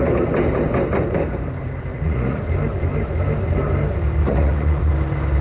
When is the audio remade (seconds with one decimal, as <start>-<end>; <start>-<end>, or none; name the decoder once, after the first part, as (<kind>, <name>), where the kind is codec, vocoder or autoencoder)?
1.9-2.4 (vocoder, Vocos); 4.2-4.9